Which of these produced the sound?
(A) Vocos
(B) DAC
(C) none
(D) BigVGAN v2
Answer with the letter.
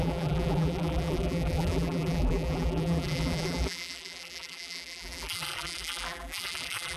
D